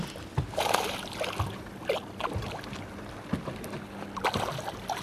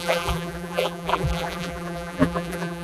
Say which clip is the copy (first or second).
second